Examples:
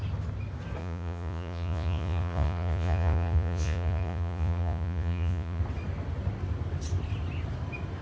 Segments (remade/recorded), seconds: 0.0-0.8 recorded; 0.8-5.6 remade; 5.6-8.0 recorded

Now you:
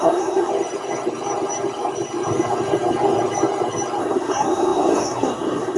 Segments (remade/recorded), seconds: 0.0-0.5 remade; 0.5-4.0 recorded; 4.0-5.8 remade